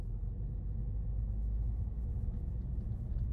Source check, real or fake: real